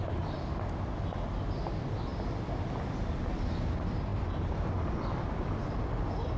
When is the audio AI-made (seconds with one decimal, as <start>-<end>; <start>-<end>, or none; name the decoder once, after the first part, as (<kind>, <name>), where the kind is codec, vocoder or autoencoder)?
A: none